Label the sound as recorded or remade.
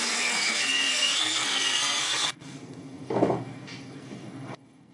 remade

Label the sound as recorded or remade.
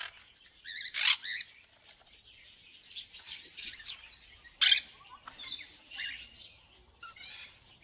recorded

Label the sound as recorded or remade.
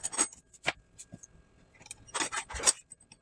recorded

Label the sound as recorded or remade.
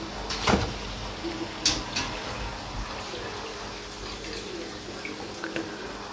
recorded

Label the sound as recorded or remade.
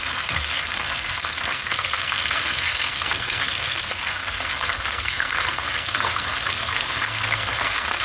remade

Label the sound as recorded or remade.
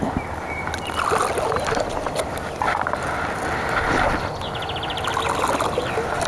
recorded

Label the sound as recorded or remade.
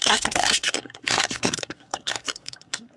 remade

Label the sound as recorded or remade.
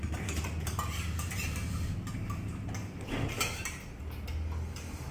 recorded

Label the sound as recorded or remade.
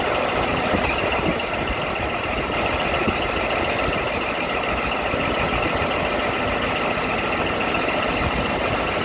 recorded